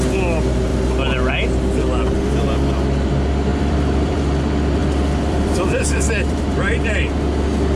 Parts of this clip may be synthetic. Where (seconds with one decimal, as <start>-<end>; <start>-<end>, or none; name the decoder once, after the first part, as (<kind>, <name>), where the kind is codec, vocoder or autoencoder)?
3.5-4.2 (vocoder, BigVGAN v2); 4.8-7.0

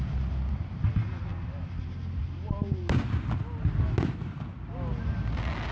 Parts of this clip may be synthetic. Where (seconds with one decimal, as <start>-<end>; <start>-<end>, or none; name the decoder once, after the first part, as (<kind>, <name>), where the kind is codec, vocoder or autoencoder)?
none